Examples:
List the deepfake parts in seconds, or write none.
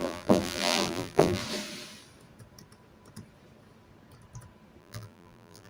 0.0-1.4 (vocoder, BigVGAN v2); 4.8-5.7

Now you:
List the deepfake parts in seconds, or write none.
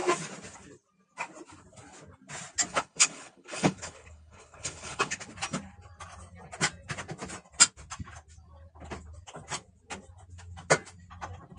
2.7-5.2 (codec, HILCodec)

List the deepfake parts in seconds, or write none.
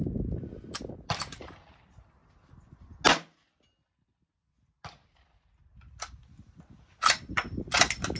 0.0-2.2 (vocoder, BigVGAN v2); 5.9-8.2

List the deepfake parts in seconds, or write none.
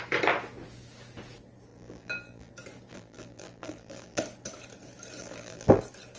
1.7-2.5 (vocoder, BigVGAN v2); 2.9-4.2; 5.2-5.8